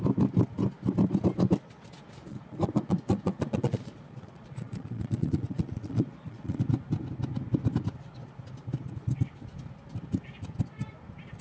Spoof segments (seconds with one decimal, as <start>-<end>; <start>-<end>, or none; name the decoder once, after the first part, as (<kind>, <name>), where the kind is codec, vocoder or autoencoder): 2.3-6.6 (vocoder, Vocos)